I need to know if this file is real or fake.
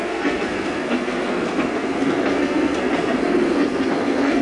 fake